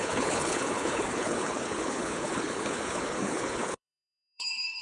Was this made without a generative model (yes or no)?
no